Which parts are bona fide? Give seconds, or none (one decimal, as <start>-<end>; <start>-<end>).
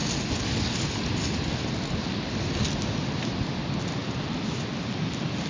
0.0-5.5